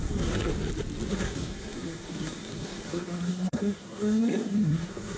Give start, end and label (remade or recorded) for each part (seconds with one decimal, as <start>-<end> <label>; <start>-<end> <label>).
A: 0.0-0.5 remade; 0.5-1.1 recorded; 1.1-5.2 remade